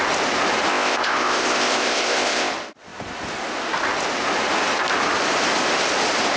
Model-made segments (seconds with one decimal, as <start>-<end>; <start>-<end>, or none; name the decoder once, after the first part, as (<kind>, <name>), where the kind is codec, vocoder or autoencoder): 0.7-2.5 (codec, ZipCodec)

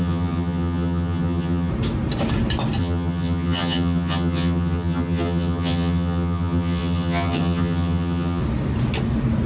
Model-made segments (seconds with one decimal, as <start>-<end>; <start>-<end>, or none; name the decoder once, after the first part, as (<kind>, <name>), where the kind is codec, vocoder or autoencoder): 0.0-1.7 (vocoder, HiFi-GAN); 2.8-8.4

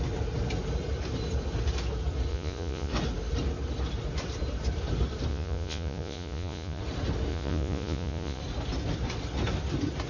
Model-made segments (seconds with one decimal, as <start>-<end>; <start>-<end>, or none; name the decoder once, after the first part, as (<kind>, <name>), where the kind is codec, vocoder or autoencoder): 2.3-2.9 (vocoder, Vocos); 5.3-6.8; 7.3-8.4

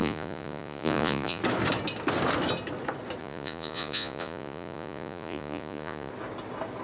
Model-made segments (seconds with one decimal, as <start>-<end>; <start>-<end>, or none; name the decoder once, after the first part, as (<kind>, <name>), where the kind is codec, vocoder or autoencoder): 0.0-1.4 (vocoder, Vocos); 3.2-6.1